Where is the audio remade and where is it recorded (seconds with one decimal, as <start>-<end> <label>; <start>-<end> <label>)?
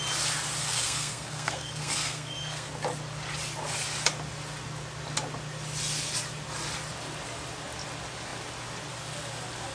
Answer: 0.0-0.6 recorded; 0.6-2.7 remade; 2.7-9.7 recorded